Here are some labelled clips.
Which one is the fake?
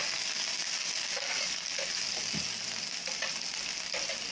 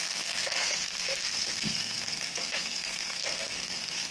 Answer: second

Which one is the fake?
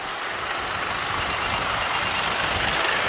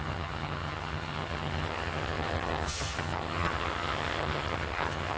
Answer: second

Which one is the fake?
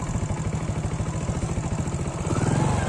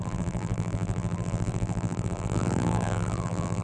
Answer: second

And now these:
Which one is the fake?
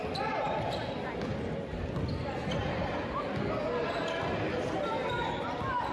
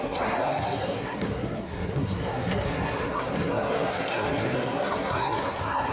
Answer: second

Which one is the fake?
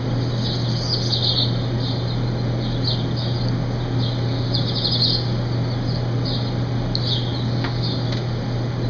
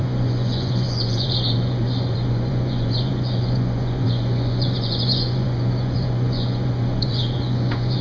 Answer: second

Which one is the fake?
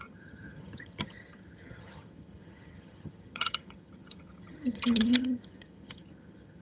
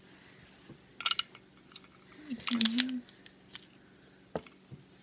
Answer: first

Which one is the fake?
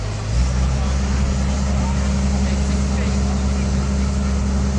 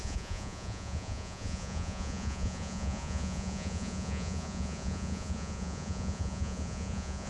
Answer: second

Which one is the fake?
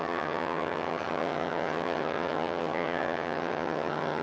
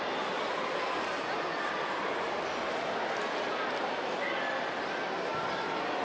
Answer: first